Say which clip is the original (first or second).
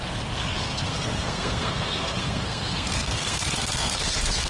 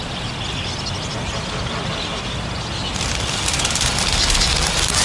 second